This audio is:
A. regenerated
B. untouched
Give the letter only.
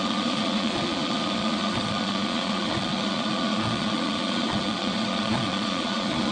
A